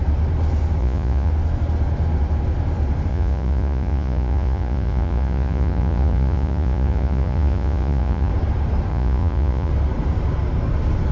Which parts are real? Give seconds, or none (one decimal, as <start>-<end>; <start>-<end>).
0.0-0.8; 1.3-3.1; 8.3-8.9; 9.7-11.1